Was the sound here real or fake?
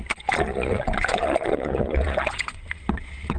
fake